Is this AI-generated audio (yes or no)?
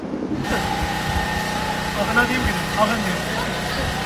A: no